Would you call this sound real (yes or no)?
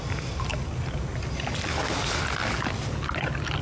yes